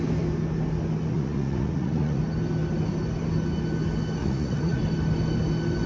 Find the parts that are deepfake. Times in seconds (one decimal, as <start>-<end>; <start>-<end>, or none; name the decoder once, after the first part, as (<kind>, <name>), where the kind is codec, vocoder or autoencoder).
1.1-2.2 (vocoder, Vocos); 4.2-4.8